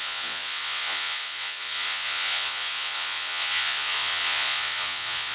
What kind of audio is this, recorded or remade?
remade